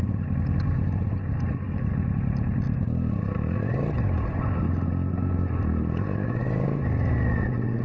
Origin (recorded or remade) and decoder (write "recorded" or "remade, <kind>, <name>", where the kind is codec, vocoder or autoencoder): recorded